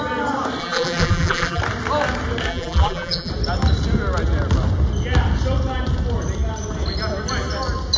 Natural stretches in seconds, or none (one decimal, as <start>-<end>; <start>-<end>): 0.0-0.6; 1.6-2.5; 3.3-8.0